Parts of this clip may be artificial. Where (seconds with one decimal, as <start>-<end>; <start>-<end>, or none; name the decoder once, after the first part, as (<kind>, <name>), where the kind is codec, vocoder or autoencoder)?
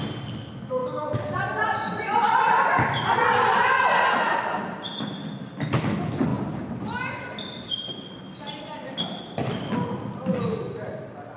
none